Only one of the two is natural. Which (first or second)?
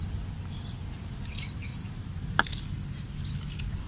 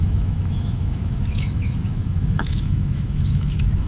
first